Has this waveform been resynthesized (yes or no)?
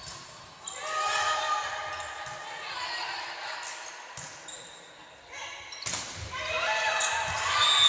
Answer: no